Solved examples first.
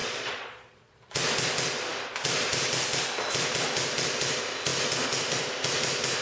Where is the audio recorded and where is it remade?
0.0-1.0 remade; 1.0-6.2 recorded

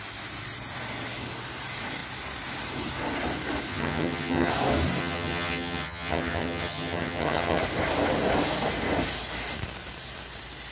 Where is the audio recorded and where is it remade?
0.0-3.7 recorded; 3.7-4.5 remade; 4.5-5.0 recorded; 5.0-7.6 remade; 7.6-10.7 recorded